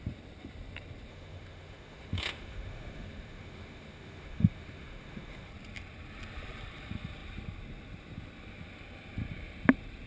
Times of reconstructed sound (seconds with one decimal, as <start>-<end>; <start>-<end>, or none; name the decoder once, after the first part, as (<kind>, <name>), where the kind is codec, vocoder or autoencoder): 1.1-5.5 (autoencoder, DAC-VAE)